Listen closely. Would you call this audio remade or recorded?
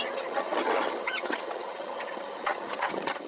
remade